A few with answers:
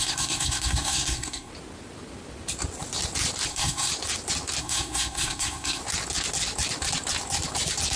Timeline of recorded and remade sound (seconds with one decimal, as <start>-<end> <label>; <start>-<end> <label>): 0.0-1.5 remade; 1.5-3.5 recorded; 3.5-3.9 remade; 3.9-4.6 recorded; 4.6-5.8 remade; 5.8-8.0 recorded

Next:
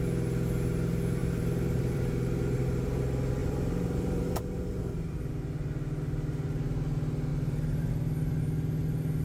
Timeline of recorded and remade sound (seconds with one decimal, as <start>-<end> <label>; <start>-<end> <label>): 0.0-1.2 recorded; 1.2-3.0 remade; 3.0-3.4 recorded; 3.4-5.3 remade; 5.3-7.3 recorded; 7.3-7.9 remade; 7.9-9.2 recorded

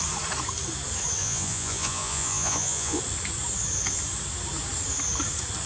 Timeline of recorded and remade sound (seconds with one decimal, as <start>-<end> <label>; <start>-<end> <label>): 0.0-1.2 recorded; 1.2-3.0 remade; 3.0-5.7 recorded